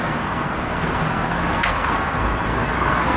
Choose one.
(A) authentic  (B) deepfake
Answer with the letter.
B